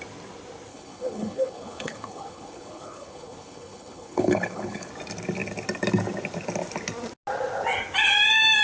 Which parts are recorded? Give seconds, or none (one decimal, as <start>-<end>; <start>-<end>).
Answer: 0.0-0.7; 4.9-8.6

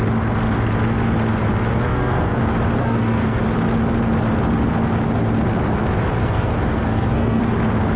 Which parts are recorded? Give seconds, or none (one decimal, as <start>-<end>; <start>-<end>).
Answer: 0.0-1.9; 2.4-2.8; 3.4-6.2; 7.4-8.0